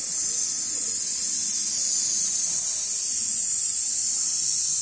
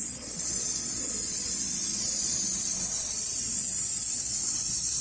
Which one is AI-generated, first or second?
second